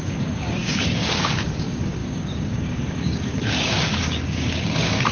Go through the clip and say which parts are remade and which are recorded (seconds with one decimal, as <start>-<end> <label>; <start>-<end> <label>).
0.0-5.1 remade